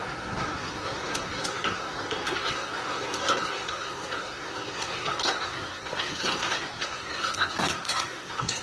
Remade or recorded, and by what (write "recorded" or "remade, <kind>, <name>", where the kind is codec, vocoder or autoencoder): remade, codec, SNAC